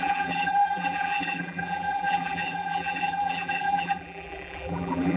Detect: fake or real fake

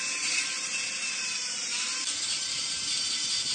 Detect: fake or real fake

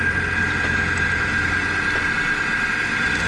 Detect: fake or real real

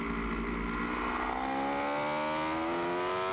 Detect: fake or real real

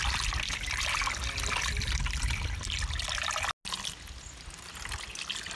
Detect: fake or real real